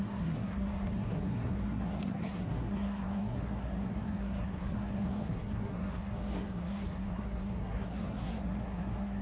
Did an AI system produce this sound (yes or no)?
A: yes